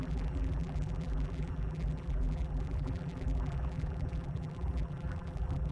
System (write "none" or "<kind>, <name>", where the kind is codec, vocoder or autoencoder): vocoder, BigVGAN v2